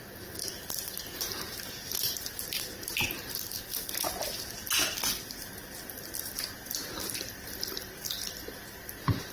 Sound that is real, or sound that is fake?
real